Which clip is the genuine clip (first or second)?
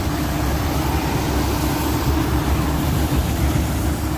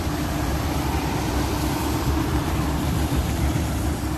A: first